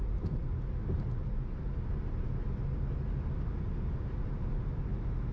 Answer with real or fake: real